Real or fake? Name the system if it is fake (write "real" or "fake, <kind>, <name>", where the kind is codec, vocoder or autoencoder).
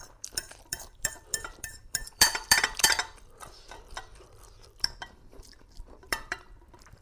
fake, vocoder, BigVGAN v2